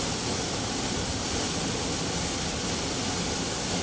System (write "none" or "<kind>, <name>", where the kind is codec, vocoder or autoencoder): none